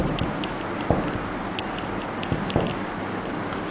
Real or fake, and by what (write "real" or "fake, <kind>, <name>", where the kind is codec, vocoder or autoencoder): real